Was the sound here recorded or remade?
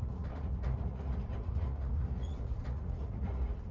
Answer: remade